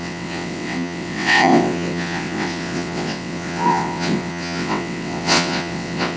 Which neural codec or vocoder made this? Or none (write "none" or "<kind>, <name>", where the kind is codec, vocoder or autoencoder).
vocoder, WaveNeXt